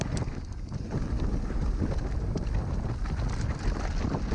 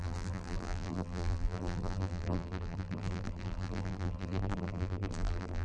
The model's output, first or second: second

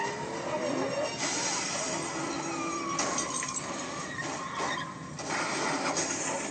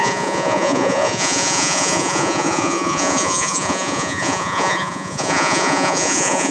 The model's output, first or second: second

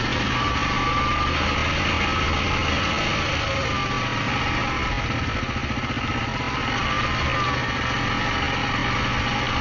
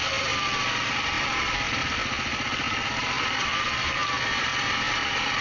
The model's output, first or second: second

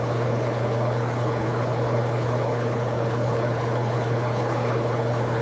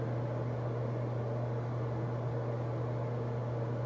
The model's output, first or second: first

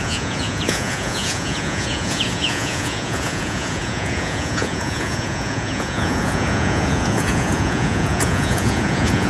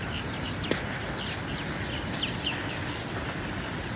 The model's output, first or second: first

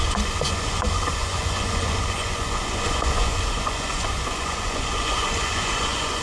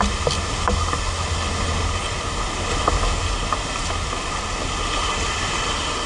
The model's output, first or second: first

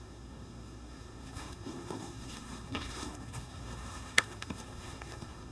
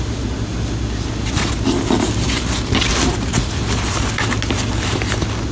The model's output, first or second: first